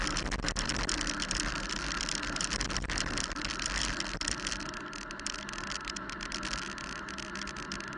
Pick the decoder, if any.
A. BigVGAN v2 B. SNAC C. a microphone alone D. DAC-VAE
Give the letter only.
C